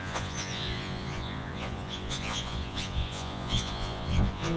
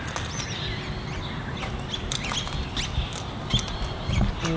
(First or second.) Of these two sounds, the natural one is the second